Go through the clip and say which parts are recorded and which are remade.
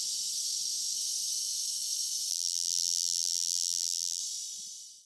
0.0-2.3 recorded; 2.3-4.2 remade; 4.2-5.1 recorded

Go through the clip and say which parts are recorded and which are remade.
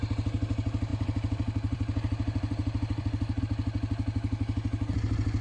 0.0-0.9 recorded; 0.9-3.4 remade; 3.4-5.4 recorded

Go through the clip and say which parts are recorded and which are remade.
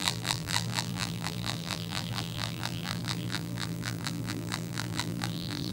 0.0-5.7 remade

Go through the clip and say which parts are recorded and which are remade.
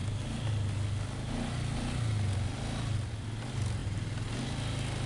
0.0-5.1 recorded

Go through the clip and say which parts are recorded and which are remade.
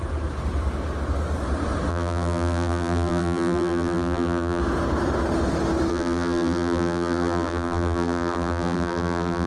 0.0-1.9 recorded; 1.9-4.6 remade; 4.6-5.9 recorded; 5.9-9.5 remade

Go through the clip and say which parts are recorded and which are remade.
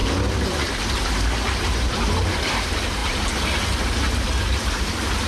0.0-5.3 remade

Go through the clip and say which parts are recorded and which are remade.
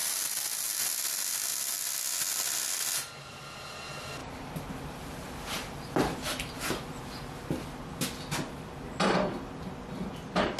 0.0-4.2 recorded; 4.2-7.0 remade; 7.0-10.6 recorded